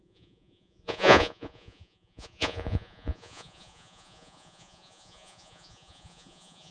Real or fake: fake